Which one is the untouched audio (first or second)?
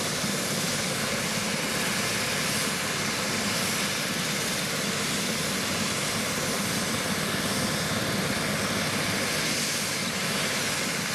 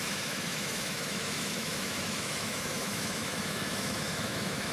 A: first